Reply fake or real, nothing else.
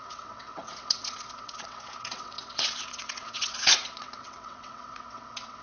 fake